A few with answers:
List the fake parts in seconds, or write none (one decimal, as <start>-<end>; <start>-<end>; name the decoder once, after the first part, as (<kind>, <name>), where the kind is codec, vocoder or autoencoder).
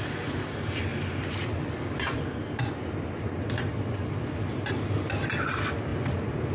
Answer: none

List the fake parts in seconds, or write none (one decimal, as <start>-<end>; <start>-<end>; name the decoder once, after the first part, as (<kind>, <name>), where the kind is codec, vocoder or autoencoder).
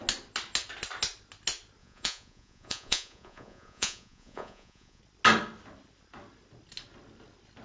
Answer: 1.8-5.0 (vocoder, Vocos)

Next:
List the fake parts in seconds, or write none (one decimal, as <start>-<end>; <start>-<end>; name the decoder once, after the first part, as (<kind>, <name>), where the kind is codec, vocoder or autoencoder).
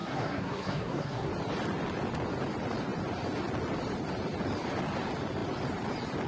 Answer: 0.0-1.3 (codec, SNAC)